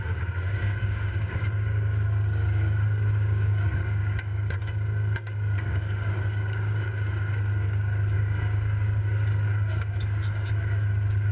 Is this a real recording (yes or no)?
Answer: no